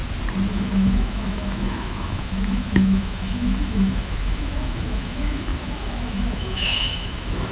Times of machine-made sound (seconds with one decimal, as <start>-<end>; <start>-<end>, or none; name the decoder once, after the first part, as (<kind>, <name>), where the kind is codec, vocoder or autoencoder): 0.5-7.5 (autoencoder, DAC-VAE)